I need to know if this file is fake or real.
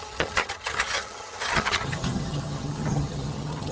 fake